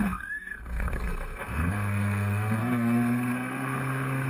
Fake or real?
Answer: fake